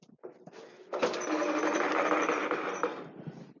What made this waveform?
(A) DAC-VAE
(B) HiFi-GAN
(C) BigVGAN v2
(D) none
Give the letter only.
D